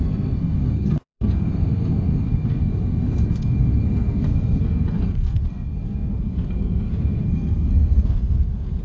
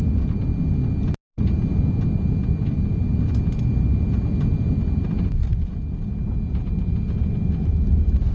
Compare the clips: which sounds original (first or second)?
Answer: second